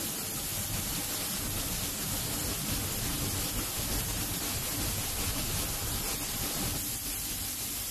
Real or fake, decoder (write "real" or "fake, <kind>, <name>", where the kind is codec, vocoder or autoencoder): real